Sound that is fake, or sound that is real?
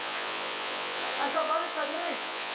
fake